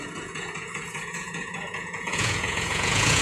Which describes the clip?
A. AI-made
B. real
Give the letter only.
A